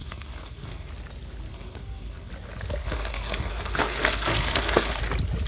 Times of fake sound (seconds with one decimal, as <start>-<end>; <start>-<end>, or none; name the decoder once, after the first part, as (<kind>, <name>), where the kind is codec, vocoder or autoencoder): 0.0-0.9 (codec, SNAC); 1.5-2.3; 2.8-5.0